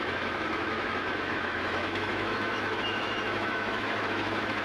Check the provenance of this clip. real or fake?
fake